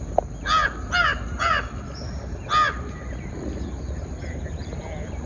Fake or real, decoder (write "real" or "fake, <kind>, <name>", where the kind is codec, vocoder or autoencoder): real